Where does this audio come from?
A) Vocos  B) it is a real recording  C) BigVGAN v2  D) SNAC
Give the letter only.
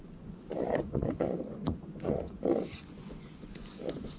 A